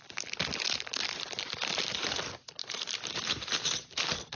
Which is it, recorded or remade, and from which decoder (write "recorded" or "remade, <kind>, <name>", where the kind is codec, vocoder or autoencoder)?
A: recorded